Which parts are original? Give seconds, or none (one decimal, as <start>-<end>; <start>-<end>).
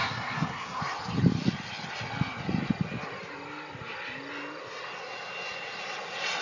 0.8-6.4